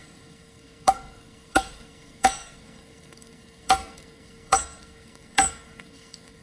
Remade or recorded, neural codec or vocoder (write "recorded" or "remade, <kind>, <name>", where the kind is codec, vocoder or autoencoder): remade, codec, SNAC